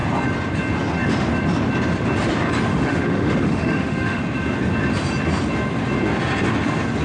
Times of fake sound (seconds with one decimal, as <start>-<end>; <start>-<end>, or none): 2.7-4.2